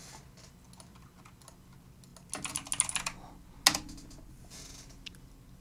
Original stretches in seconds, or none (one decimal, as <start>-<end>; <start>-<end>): 0.0-5.6